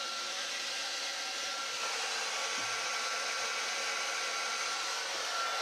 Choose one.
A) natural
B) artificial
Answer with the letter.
A